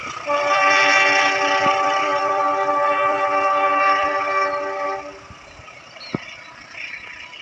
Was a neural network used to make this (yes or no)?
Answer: yes